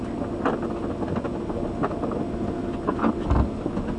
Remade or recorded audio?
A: recorded